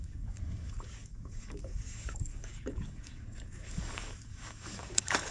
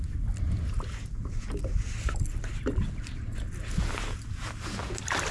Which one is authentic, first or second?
second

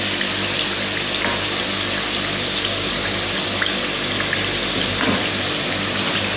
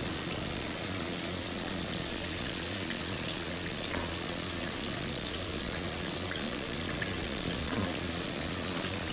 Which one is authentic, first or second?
first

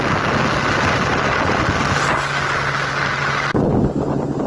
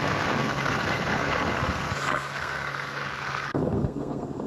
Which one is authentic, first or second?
first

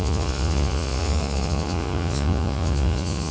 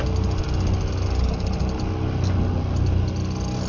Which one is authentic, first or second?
second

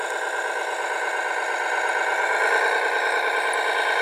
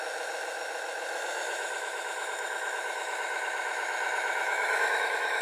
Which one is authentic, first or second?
first